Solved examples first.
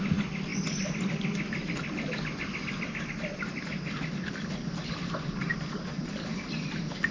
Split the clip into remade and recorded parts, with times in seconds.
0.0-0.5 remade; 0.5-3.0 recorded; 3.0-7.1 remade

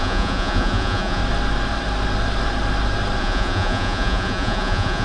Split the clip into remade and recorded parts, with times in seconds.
0.0-1.2 remade; 1.2-3.2 recorded; 3.2-5.0 remade

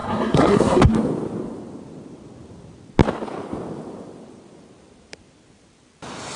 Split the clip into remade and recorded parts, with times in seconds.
0.0-0.9 remade; 0.9-6.4 recorded